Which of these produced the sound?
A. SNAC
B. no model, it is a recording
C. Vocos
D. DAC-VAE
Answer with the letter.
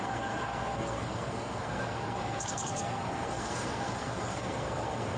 A